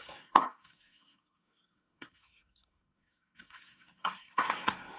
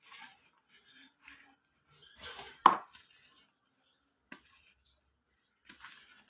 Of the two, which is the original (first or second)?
second